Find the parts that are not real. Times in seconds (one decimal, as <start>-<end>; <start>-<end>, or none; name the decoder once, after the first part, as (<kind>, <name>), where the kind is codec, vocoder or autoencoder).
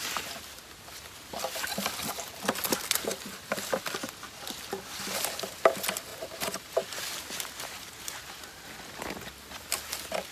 6.1-6.7 (vocoder, BigVGAN v2)